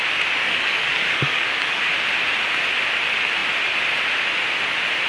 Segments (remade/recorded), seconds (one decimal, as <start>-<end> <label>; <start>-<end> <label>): 0.0-0.4 recorded; 0.4-1.8 remade; 1.8-5.1 recorded